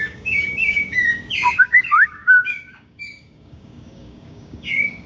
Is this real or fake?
fake